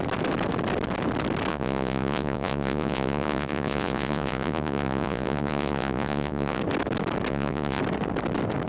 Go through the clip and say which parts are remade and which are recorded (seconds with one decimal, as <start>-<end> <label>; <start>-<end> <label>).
0.0-1.5 recorded; 1.5-6.6 remade; 6.6-7.3 recorded; 7.3-7.8 remade; 7.8-8.7 recorded